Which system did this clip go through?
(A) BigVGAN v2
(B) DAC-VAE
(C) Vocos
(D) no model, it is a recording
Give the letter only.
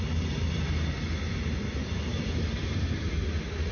D